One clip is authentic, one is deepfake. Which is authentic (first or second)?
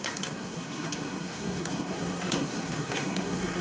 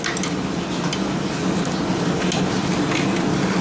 second